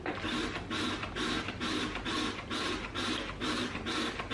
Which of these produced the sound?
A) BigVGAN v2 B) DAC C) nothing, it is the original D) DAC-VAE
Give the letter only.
C